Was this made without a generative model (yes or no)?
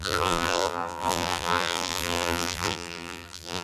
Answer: no